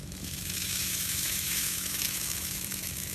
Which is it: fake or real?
fake